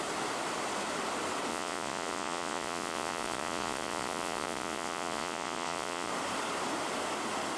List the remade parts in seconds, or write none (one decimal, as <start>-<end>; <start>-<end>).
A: 1.5-6.1